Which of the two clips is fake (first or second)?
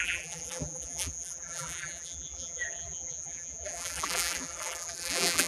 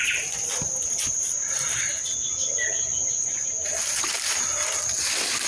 first